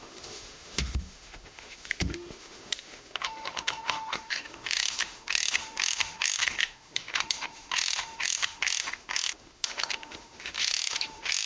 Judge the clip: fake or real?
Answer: fake